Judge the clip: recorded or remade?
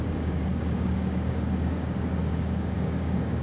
remade